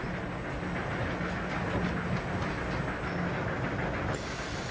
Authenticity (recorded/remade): recorded